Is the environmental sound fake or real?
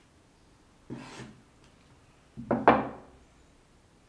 real